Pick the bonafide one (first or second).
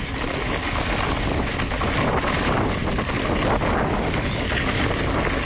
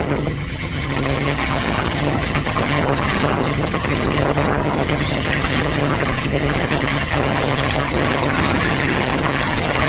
first